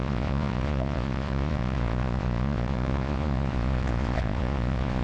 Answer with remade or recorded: remade